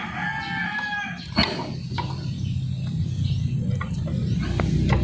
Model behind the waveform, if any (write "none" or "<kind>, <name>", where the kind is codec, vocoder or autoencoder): none